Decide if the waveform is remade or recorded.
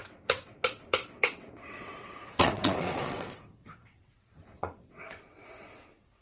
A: remade